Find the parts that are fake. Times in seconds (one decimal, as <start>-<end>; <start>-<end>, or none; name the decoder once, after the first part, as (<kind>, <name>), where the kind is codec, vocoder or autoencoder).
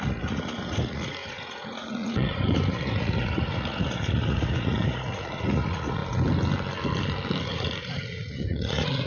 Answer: 0.0-6.0 (vocoder, Vocos); 7.4-9.1